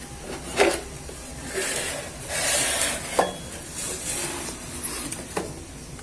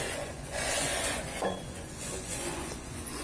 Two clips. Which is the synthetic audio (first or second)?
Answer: second